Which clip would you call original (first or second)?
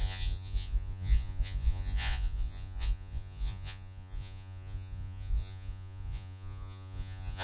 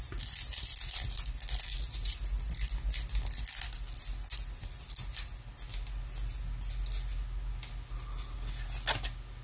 second